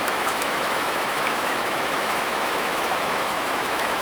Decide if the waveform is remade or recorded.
remade